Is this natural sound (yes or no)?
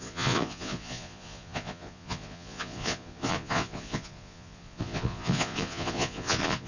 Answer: no